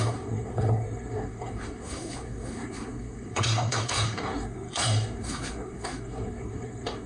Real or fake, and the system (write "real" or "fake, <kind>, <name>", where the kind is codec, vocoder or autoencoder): fake, codec, SNAC